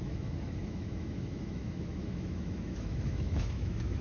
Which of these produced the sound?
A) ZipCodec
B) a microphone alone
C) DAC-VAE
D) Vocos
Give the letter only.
C